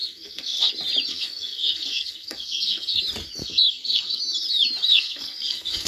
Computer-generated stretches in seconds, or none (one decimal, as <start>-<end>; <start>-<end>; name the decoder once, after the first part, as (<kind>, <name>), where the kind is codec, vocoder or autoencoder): 0.0-0.7 (codec, SNAC); 1.1-3.0; 3.4-4.2; 4.9-5.9